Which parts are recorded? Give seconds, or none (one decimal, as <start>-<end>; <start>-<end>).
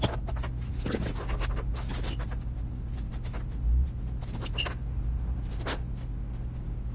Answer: 0.0-6.9